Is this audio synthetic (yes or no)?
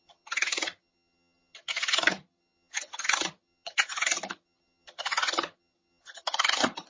yes